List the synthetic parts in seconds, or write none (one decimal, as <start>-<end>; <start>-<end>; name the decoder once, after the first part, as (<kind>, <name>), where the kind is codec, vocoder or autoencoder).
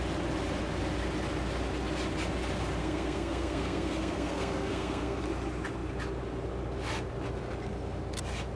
2.8-5.2 (codec, SNAC)